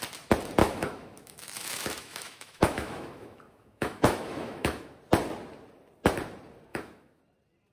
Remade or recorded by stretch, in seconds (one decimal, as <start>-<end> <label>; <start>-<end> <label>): 0.0-0.6 recorded; 0.6-5.0 remade; 5.0-6.7 recorded; 6.7-7.2 remade; 7.2-7.7 recorded